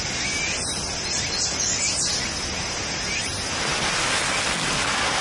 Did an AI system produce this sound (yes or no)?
no